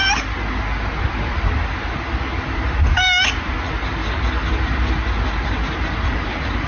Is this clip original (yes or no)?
yes